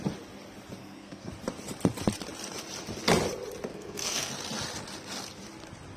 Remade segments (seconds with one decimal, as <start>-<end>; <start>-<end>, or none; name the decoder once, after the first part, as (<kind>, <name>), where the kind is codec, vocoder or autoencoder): 0.8-1.3 (codec, SNAC); 3.7-4.3